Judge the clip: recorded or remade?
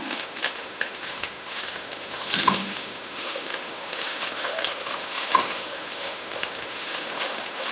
remade